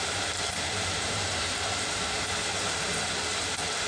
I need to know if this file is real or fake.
fake